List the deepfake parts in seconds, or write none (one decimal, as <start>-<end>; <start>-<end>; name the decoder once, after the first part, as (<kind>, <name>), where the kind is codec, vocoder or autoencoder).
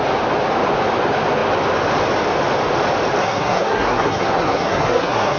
3.2-5.4 (codec, SNAC)